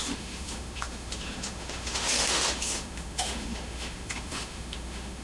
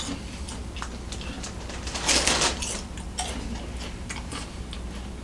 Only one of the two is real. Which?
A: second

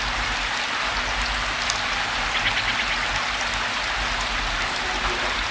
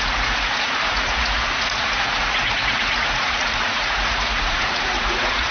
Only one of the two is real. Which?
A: first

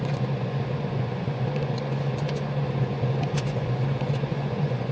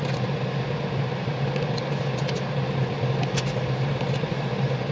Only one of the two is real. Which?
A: second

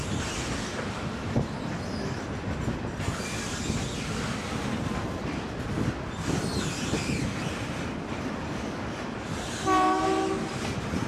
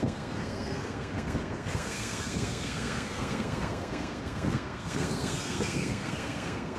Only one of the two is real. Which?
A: first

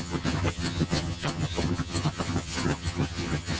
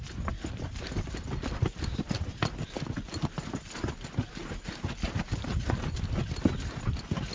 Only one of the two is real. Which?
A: second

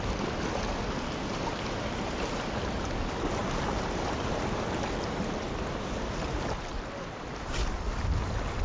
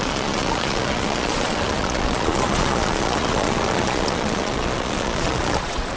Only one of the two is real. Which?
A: first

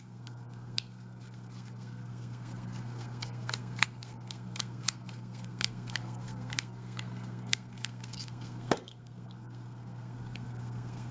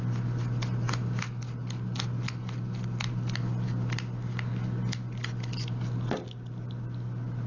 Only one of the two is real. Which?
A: second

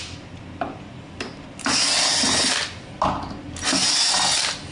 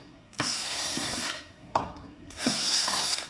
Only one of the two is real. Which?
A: first